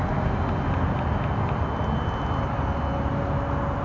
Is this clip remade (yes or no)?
no